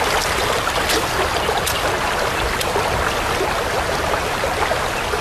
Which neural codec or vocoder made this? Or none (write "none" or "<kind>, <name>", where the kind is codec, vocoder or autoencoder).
none